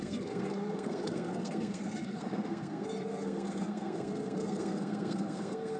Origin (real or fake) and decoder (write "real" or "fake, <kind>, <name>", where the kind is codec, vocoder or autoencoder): fake, codec, SNAC